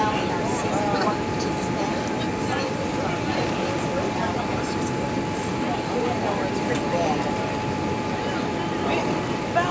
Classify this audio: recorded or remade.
recorded